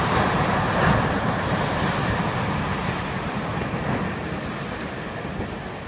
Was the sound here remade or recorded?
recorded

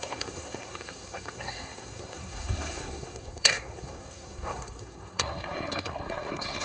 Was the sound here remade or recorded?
remade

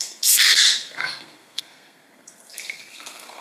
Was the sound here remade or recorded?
remade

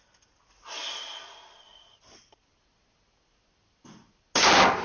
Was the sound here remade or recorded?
recorded